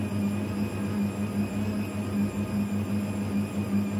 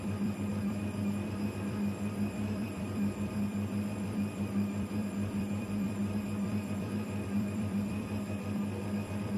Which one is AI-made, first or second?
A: second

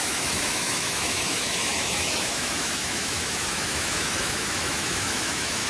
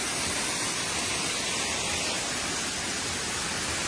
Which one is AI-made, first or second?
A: first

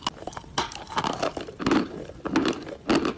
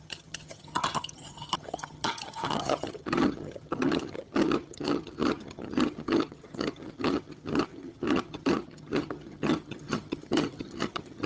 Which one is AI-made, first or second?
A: second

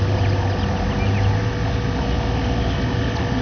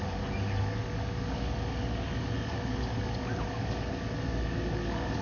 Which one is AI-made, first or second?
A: second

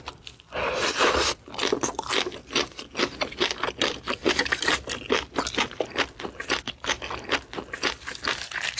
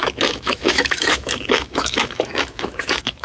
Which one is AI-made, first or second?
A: second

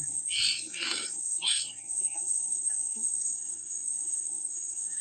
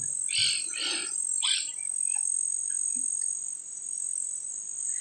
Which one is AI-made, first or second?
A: first